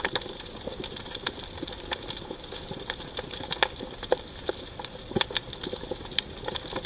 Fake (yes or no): no